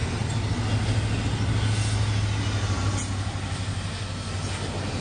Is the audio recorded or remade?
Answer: recorded